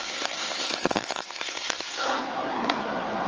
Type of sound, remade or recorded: remade